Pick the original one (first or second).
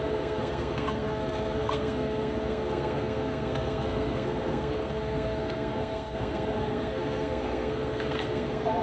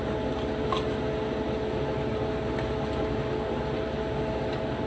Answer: second